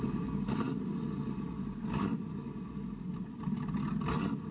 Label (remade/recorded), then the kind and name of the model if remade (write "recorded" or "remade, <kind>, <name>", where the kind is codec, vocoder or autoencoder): recorded